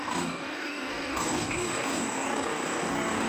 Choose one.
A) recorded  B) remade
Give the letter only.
B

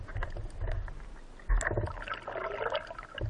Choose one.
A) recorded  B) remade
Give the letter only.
A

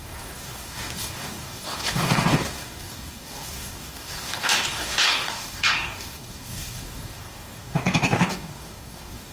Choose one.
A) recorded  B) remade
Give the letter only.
B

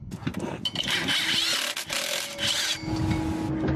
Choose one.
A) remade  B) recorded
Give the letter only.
B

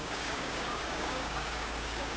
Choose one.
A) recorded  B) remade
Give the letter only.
B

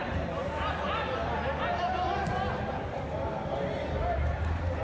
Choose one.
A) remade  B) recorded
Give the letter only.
B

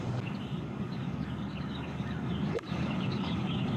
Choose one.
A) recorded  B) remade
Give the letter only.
B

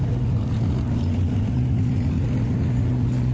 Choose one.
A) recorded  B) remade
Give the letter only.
A